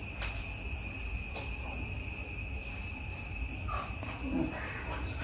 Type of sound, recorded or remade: recorded